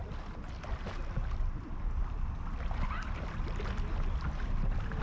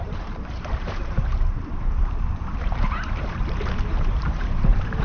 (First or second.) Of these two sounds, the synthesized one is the second